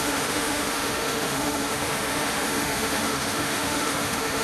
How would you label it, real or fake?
fake